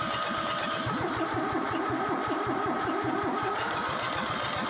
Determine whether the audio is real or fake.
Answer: fake